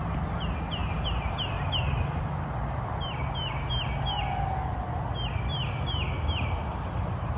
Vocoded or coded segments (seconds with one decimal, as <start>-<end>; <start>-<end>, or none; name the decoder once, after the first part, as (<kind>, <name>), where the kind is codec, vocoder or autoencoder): none